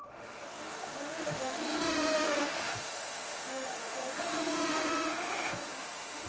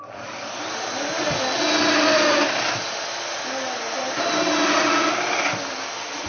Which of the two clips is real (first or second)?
second